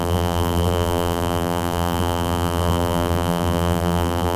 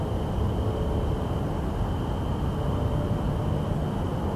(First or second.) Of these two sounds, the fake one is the first